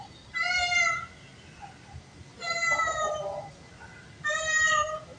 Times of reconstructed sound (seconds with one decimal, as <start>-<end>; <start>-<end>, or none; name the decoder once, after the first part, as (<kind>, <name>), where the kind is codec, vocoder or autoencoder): none